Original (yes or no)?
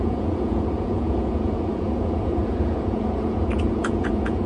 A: no